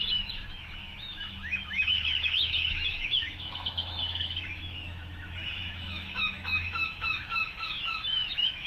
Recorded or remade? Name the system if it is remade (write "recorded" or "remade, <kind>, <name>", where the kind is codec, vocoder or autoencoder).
remade, autoencoder, DAC-VAE